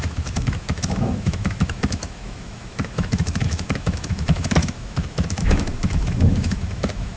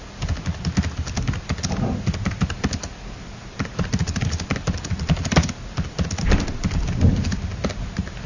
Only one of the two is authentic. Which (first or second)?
second